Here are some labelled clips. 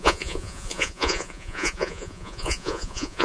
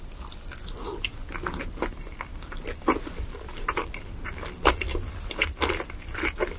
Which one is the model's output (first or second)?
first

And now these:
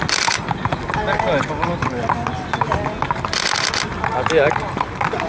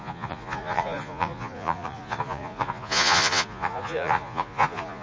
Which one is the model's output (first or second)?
second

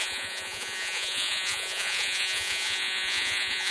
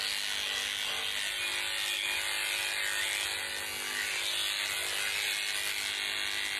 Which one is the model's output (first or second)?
first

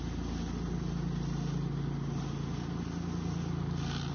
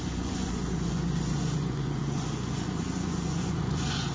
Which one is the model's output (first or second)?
second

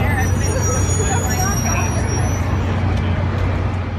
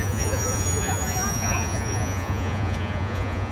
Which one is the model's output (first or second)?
second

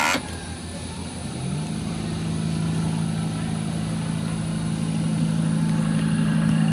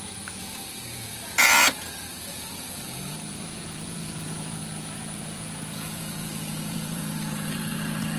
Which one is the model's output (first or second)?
second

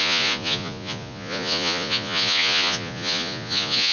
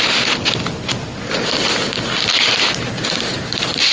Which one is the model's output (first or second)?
first